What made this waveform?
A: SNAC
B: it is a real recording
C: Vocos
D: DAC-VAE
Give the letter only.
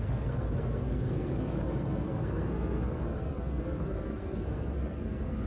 A